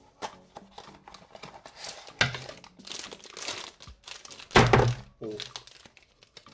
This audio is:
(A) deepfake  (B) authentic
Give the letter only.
B